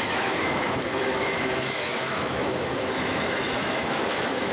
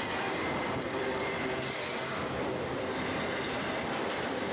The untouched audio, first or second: second